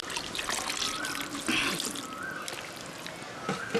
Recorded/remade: recorded